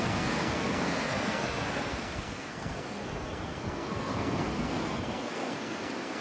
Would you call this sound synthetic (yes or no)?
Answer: yes